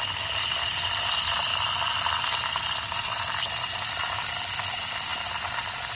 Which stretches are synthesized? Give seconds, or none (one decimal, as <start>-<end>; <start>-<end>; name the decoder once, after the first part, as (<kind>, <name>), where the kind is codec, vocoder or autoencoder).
none